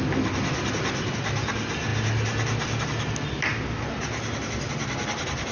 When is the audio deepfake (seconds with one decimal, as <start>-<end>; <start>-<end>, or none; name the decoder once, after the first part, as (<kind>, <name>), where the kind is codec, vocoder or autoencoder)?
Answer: none